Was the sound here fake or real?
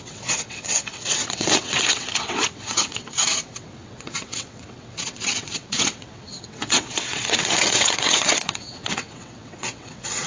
fake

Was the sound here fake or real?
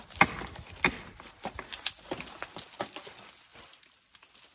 real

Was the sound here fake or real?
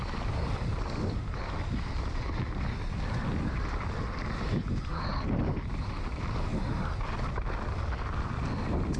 real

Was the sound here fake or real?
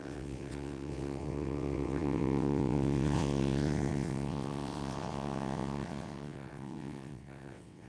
fake